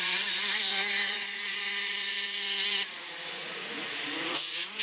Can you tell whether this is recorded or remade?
remade